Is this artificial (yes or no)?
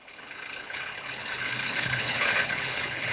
yes